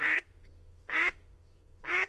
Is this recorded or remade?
remade